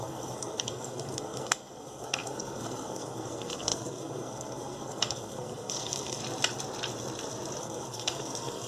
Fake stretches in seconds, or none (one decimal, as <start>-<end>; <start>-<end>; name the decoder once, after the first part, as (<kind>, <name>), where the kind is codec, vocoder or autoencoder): 0.0-6.2 (codec, SNAC); 7.6-8.7